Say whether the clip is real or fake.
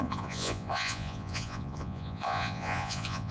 fake